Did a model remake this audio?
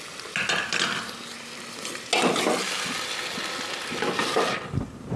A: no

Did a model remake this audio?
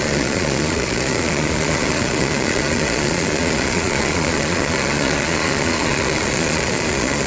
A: yes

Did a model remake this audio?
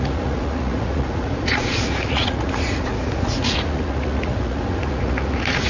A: yes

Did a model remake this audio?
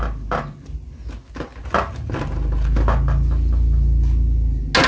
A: no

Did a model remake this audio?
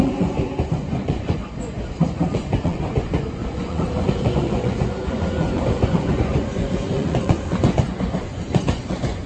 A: yes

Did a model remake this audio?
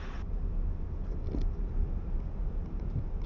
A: no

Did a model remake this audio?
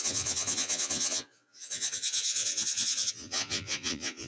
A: yes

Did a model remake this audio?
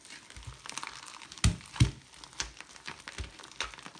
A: no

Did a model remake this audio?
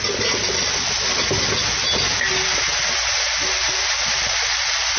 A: no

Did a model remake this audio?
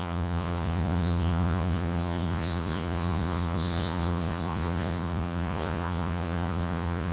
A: yes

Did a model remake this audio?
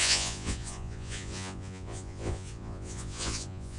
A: yes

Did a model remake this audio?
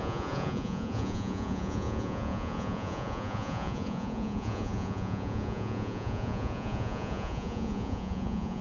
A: yes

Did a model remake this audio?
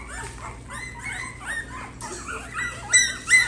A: no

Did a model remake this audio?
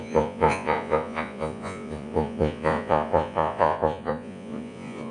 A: yes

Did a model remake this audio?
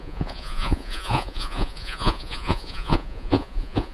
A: yes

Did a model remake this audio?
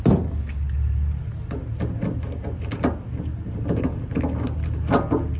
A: no